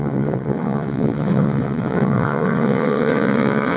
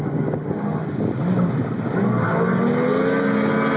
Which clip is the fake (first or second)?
first